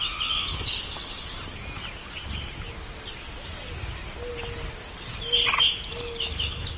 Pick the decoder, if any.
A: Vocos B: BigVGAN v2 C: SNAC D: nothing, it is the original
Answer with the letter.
D